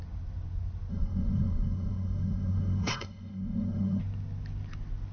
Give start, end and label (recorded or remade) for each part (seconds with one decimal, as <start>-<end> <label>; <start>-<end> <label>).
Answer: 0.0-0.9 recorded; 0.9-4.0 remade; 4.0-5.1 recorded